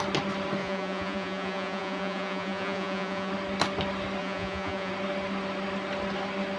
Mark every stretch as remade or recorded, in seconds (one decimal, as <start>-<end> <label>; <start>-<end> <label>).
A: 0.0-0.6 recorded; 0.6-3.3 remade; 3.3-4.2 recorded; 4.2-4.9 remade; 4.9-6.6 recorded